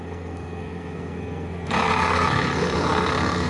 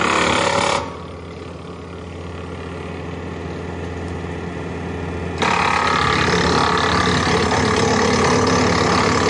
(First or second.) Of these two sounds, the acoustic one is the second